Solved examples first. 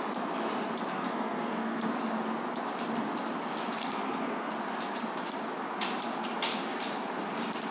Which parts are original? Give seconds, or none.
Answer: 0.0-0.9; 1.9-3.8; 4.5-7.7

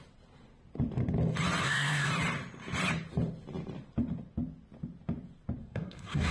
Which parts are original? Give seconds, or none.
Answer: 0.0-1.6; 2.1-5.6

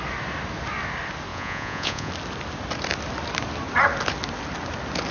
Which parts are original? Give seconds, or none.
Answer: 0.0-1.3; 2.1-5.1